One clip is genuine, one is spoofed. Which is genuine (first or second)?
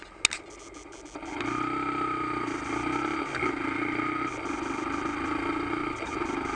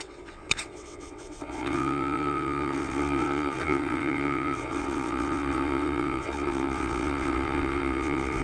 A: first